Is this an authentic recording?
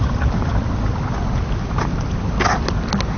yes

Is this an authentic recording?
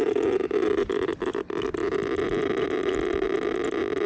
yes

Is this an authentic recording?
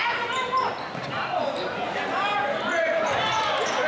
yes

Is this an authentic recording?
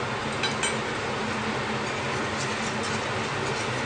yes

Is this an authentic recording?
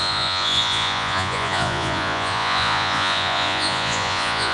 no